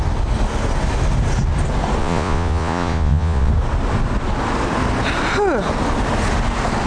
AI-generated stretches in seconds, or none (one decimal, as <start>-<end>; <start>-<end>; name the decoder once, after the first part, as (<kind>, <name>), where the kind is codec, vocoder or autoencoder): 2.0-3.5 (vocoder, Vocos)